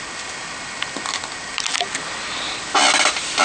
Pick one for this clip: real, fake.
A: real